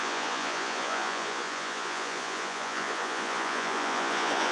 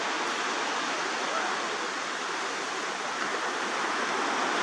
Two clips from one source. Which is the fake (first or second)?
first